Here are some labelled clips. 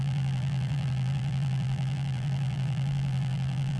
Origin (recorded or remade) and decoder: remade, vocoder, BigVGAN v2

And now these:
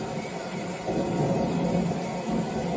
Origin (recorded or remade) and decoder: recorded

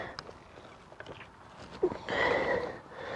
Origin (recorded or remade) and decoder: recorded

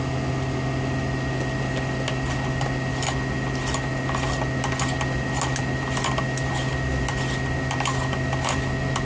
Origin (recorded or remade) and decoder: recorded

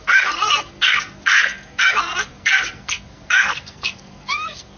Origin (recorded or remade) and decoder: remade, codec, SNAC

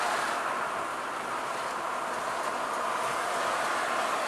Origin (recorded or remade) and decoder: recorded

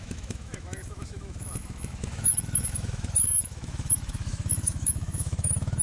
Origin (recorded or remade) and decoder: remade, autoencoder, DAC-VAE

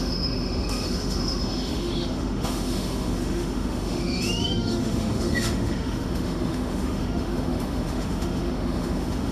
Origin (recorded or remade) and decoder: remade, autoencoder, DAC-VAE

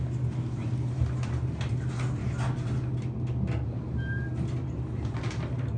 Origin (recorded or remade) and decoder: recorded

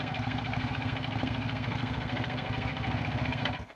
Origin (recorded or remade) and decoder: remade, codec, SNAC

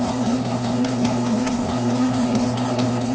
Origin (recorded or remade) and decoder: remade, codec, SNAC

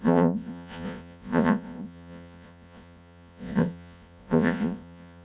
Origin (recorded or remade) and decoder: remade, vocoder, Vocos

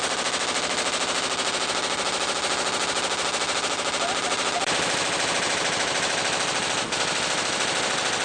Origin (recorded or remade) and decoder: remade, vocoder, BigVGAN v2